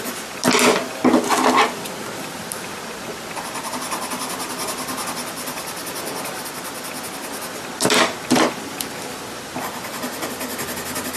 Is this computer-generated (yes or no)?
no